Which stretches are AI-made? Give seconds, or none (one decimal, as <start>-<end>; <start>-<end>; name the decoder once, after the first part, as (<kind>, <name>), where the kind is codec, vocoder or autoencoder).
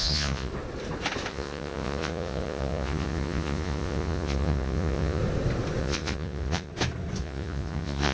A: 0.0-0.5 (vocoder, Vocos); 1.3-5.2; 5.8-6.7; 7.2-8.1